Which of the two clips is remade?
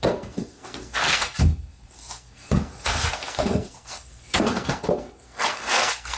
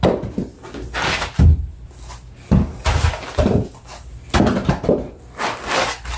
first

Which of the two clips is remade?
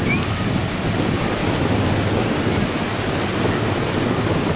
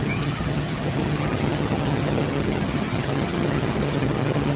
second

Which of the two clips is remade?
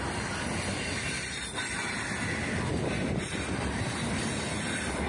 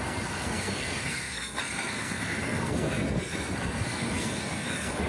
second